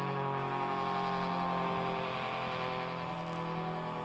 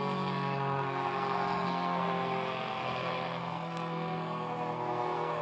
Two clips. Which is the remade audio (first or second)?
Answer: second